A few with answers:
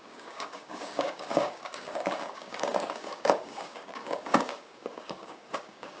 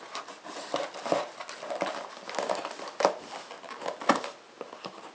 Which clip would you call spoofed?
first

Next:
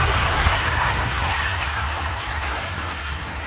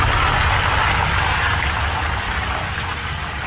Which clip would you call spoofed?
first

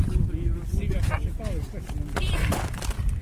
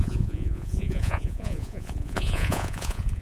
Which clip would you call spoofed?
second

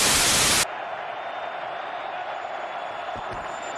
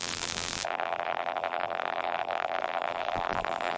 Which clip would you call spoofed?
second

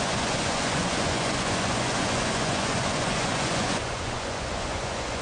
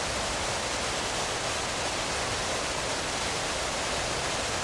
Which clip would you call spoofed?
first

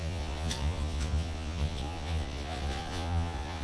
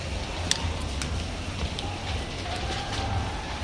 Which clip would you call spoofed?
first